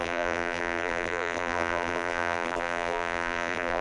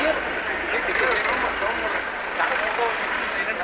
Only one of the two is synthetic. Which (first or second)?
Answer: first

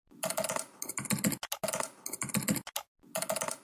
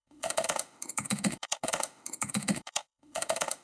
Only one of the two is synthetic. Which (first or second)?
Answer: second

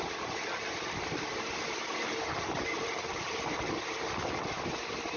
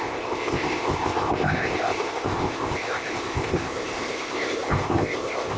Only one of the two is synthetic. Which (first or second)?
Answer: second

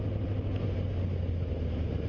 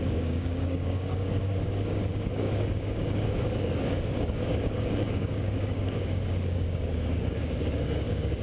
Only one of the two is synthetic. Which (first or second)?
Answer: second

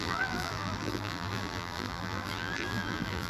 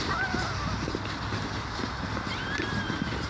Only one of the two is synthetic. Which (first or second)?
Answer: first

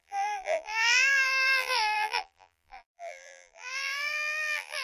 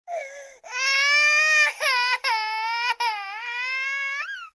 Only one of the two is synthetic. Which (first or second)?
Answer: first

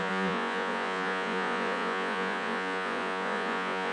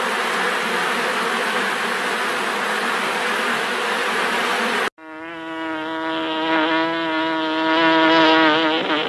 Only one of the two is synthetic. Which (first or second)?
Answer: first